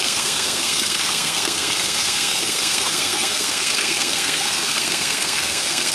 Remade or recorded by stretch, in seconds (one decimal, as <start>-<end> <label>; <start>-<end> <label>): 0.0-5.9 remade

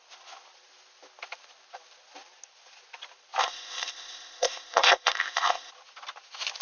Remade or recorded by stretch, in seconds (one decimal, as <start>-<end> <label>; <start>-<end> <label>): 0.0-3.4 recorded; 3.4-5.7 remade; 5.7-6.6 recorded

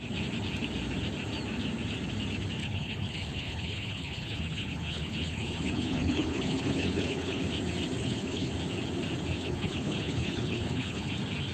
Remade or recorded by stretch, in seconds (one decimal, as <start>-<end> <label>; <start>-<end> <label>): 0.0-2.6 recorded; 2.6-7.4 remade; 7.4-8.0 recorded; 8.0-8.5 remade; 8.5-9.4 recorded; 9.4-11.1 remade; 11.1-11.5 recorded

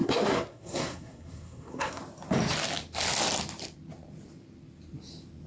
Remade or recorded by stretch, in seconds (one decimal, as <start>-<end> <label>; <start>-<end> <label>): 0.0-2.0 remade; 2.0-5.5 recorded

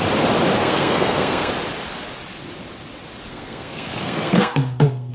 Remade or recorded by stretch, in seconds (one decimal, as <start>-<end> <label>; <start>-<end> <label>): 0.0-0.6 recorded; 0.6-1.5 remade; 1.5-3.3 recorded; 3.3-5.1 remade

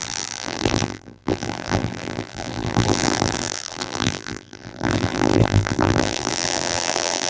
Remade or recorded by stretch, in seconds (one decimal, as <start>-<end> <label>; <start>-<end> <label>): 0.0-7.3 remade